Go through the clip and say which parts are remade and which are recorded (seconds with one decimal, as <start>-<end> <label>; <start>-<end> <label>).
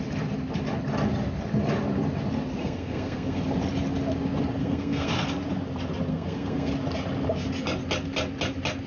0.0-2.6 recorded; 2.6-3.4 remade; 3.4-4.6 recorded; 4.6-5.1 remade; 5.1-6.1 recorded; 6.1-6.7 remade; 6.7-8.9 recorded